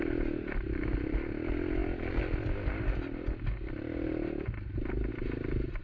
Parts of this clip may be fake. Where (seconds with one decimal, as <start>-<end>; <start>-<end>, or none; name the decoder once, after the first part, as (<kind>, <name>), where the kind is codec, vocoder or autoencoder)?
none